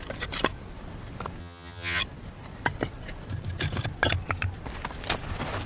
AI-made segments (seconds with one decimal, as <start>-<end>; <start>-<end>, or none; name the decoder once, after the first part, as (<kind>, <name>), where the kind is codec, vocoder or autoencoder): 1.4-2.0 (vocoder, HiFi-GAN)